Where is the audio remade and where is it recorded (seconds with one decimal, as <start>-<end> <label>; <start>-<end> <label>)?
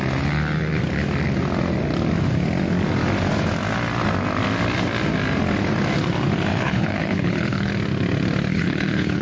0.0-6.5 recorded; 6.5-7.7 remade; 7.7-8.5 recorded; 8.5-9.2 remade